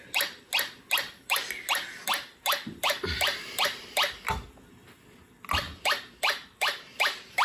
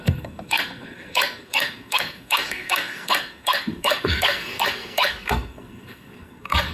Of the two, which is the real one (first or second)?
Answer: first